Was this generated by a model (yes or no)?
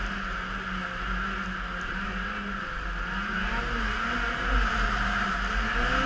no